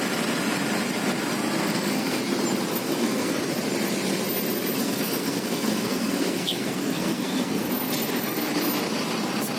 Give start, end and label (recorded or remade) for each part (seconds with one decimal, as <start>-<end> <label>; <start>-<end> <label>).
0.0-1.6 recorded; 1.6-2.2 remade; 2.2-2.8 recorded; 2.8-3.4 remade; 3.4-4.8 recorded; 4.8-7.7 remade; 7.7-9.6 recorded

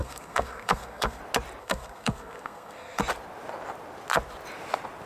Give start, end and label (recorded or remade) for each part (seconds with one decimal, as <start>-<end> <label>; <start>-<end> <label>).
0.0-1.2 remade; 1.2-1.6 recorded; 1.6-3.0 remade; 3.0-5.1 recorded

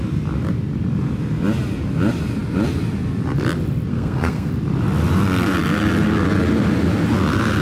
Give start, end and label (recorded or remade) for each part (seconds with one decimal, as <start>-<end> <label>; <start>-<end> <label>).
0.0-3.9 recorded; 3.9-4.5 remade; 4.5-7.6 recorded

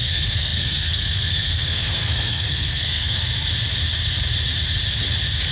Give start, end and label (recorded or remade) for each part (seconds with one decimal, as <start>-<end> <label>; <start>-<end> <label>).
0.0-3.3 remade; 3.3-5.5 recorded

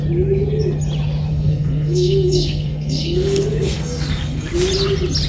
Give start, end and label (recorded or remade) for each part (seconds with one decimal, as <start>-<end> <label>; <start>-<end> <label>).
0.0-1.3 recorded; 1.3-4.5 remade; 4.5-5.3 recorded

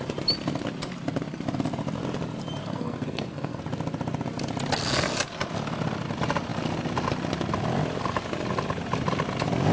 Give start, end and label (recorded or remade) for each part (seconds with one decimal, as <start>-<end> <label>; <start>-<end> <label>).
0.0-2.6 recorded; 2.6-3.6 remade; 3.6-9.7 recorded

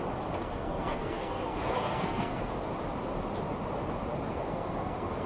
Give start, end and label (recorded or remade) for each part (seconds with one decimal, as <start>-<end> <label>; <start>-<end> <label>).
0.0-0.4 recorded; 0.4-2.7 remade; 2.7-4.3 recorded; 4.3-5.3 remade

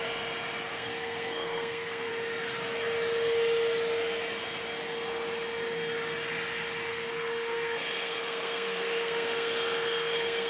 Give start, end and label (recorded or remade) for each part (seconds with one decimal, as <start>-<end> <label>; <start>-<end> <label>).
0.0-0.7 recorded; 0.7-2.1 remade; 2.1-6.9 recorded; 6.9-10.5 remade